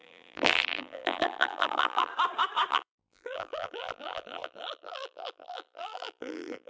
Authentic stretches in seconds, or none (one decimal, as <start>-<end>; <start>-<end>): 2.1-2.7